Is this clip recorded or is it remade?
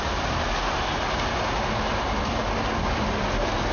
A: recorded